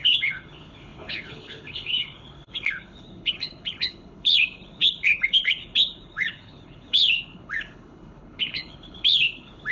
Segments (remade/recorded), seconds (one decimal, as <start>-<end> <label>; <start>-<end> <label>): 0.0-9.7 remade